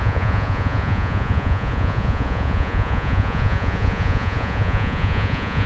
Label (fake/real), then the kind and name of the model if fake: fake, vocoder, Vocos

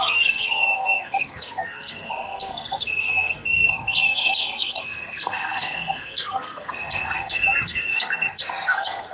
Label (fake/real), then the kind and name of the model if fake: fake, codec, SNAC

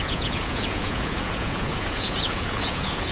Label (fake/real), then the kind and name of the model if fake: fake, vocoder, Vocos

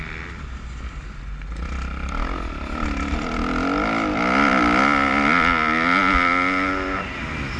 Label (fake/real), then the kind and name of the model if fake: real